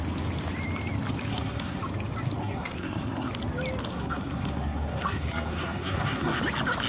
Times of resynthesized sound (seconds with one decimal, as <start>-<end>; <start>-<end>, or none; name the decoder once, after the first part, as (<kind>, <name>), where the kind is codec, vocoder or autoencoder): 1.3-1.8 (codec, SNAC); 2.4-3.3; 3.9-6.4